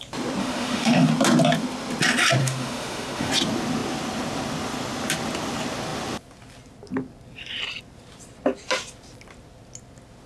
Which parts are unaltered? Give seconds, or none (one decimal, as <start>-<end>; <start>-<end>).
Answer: 0.0-0.4; 1.1-2.4; 3.3-10.3